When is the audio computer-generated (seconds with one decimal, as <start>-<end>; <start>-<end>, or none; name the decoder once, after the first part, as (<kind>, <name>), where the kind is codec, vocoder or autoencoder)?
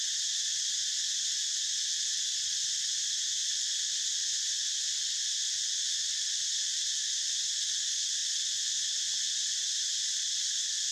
none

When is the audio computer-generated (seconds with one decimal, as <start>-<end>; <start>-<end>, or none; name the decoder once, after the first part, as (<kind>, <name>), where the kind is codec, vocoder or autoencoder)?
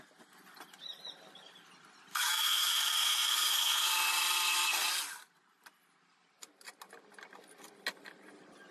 2.1-3.9 (autoencoder, DAC-VAE)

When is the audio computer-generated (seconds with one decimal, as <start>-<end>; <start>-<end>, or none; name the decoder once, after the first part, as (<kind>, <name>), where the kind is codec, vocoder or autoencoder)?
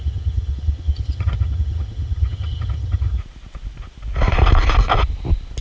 0.0-3.2 (vocoder, HiFi-GAN)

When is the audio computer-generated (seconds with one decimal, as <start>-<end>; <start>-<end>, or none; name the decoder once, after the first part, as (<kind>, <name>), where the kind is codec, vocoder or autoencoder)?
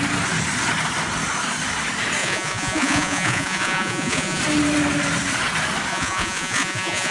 2.2-4.4 (vocoder, Vocos); 5.9-7.1